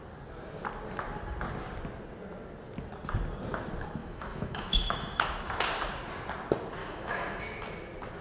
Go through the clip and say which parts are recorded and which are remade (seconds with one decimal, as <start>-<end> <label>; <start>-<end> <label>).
0.0-4.0 recorded; 4.0-5.4 remade; 5.4-6.8 recorded; 6.8-7.4 remade; 7.4-8.2 recorded